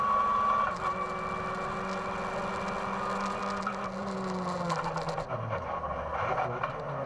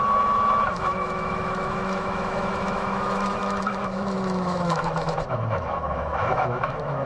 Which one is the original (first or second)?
first